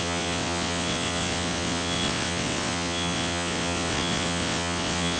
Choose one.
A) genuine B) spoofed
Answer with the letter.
B